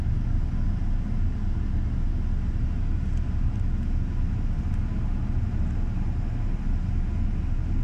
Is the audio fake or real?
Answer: real